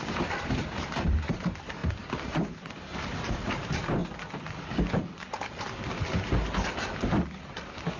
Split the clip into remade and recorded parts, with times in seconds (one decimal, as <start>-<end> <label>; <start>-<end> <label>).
0.0-4.0 remade; 4.0-7.4 recorded; 7.4-8.0 remade